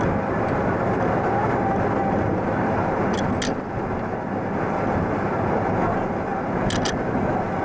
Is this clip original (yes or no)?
yes